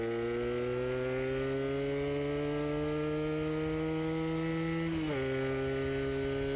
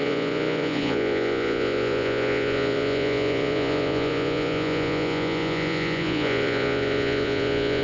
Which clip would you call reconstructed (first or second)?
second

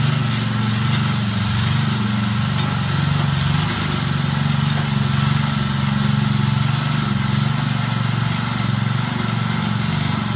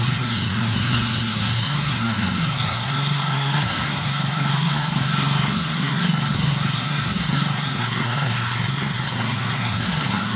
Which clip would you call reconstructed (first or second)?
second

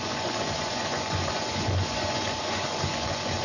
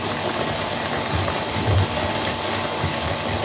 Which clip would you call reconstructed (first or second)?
first